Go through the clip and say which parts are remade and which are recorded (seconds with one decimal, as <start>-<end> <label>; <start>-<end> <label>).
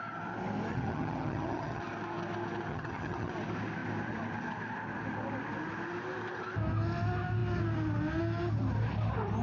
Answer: 0.0-0.7 recorded; 0.7-1.8 remade; 1.8-2.7 recorded; 2.7-3.3 remade; 3.3-9.4 recorded